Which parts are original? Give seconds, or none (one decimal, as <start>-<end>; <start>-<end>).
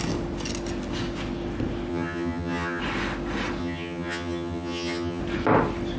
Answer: 0.0-1.9; 2.8-3.6; 5.2-6.0